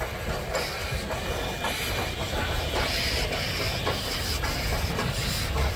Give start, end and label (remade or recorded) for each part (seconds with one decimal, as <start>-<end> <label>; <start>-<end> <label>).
0.0-2.2 recorded; 2.2-2.9 remade; 2.9-5.8 recorded

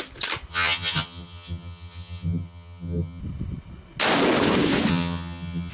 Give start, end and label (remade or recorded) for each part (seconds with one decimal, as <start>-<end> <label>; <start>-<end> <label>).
0.0-0.5 recorded; 0.5-3.2 remade; 3.2-4.9 recorded; 4.9-5.7 remade

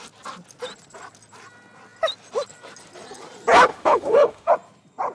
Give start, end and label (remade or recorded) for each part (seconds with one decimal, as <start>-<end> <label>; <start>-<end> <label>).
0.0-3.7 recorded; 3.7-4.5 remade; 4.5-5.1 recorded

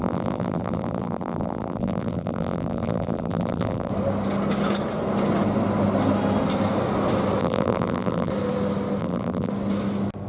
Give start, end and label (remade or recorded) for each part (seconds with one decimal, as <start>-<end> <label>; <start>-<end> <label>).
0.0-3.9 remade; 3.9-7.4 recorded; 7.4-8.3 remade; 8.3-9.0 recorded; 9.0-9.5 remade; 9.5-10.3 recorded

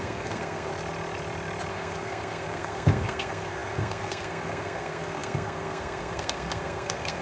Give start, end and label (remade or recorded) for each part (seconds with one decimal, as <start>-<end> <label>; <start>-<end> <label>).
0.0-0.7 remade; 0.7-1.7 recorded; 1.7-7.2 remade

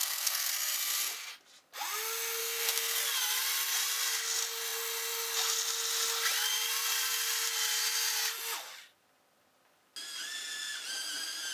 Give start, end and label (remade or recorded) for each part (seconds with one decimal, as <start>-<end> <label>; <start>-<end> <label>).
0.0-0.5 remade; 0.5-2.4 recorded; 2.4-3.0 remade; 3.0-11.5 recorded

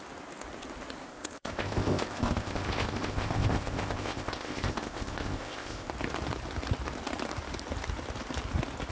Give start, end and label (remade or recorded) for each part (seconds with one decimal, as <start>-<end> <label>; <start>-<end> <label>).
0.0-1.1 recorded; 1.1-5.9 remade; 5.9-8.9 recorded

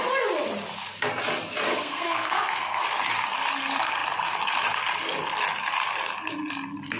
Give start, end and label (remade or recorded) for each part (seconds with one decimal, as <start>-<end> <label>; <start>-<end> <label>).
0.0-1.7 recorded; 1.7-2.8 remade; 2.8-7.0 recorded